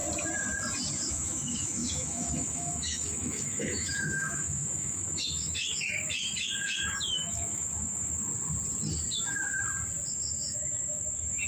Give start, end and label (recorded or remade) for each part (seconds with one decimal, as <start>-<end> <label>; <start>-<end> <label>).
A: 0.0-1.1 recorded; 1.1-8.3 remade; 8.3-10.1 recorded; 10.1-11.5 remade